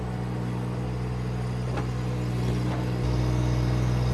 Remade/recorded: recorded